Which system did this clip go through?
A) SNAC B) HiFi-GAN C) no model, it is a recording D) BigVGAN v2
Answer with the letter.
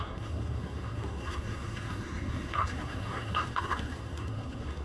A